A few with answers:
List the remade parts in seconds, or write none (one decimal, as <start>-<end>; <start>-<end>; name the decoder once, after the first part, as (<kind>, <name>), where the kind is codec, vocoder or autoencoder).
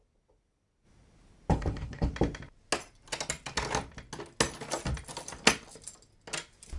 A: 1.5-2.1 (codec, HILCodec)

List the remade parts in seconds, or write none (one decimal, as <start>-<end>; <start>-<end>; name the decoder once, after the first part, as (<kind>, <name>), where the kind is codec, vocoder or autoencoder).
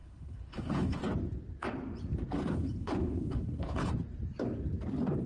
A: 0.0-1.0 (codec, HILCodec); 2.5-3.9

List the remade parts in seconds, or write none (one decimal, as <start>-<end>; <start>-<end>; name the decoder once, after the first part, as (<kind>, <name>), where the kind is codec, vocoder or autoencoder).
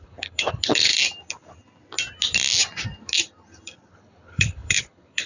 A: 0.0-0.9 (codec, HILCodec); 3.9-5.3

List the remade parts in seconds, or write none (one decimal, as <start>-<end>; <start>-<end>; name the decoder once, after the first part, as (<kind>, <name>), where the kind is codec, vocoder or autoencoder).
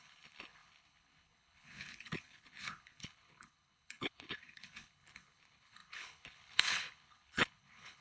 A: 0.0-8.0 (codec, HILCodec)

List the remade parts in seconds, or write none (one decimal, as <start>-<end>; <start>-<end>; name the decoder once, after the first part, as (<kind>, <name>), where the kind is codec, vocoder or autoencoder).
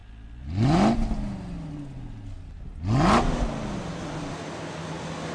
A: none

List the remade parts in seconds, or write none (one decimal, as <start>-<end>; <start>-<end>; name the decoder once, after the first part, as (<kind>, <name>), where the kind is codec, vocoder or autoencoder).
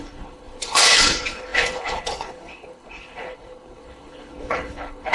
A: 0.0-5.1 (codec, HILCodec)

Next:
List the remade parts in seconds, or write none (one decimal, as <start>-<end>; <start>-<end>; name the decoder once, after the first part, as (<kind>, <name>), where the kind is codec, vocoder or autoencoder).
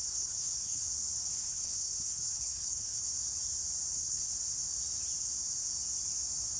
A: 0.0-0.8 (codec, HILCodec); 1.4-3.1; 3.9-4.3